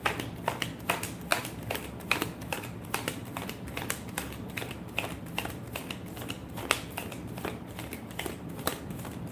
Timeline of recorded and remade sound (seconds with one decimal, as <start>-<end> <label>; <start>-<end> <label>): 0.0-1.3 recorded; 1.3-5.6 remade; 5.6-6.4 recorded; 6.4-9.3 remade